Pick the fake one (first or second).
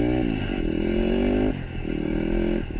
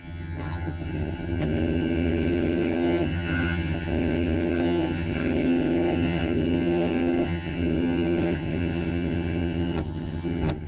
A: second